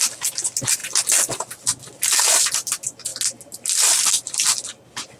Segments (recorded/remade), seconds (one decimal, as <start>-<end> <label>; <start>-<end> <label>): 0.0-5.2 recorded